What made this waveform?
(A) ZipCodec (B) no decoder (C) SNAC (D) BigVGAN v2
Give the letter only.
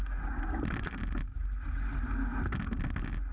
B